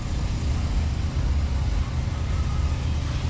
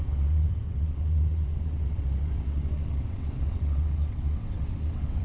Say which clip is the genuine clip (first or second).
first